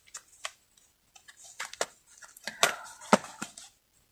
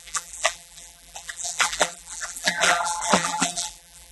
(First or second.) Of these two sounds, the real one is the first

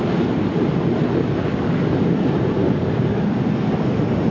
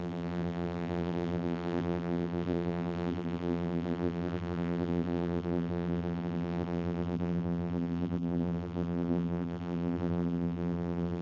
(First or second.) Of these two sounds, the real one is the first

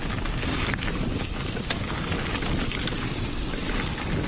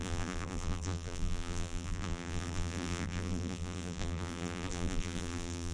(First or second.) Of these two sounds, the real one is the first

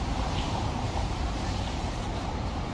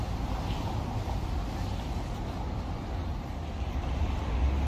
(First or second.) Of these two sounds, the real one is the second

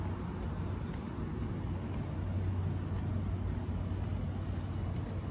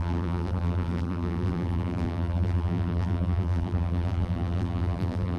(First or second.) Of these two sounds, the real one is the first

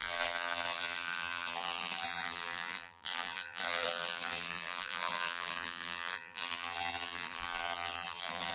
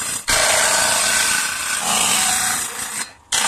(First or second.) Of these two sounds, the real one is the second